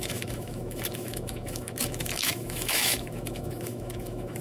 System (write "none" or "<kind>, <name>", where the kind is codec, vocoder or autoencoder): autoencoder, DAC-VAE